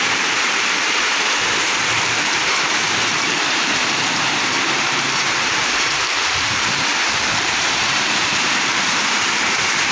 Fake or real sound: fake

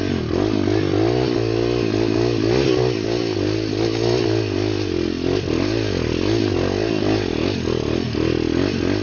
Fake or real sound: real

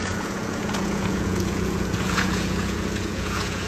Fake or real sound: fake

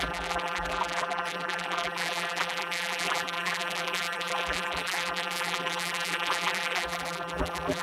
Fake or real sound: fake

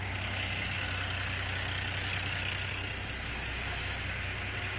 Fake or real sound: real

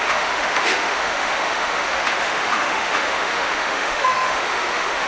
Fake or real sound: fake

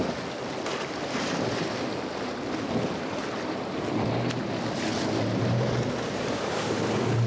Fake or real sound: real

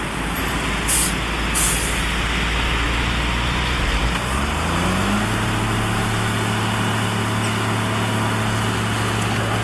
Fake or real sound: real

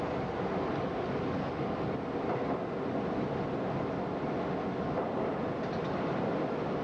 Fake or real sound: real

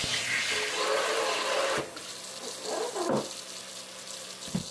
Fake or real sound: real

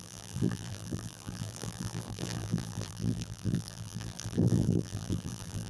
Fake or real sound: fake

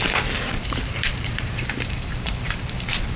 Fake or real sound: fake